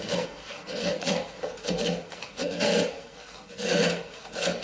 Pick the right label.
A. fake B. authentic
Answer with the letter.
A